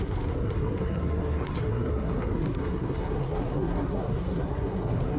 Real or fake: fake